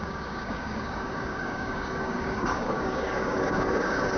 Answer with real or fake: fake